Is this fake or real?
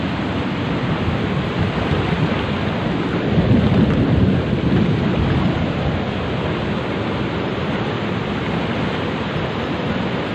real